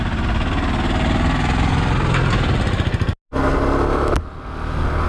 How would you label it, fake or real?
real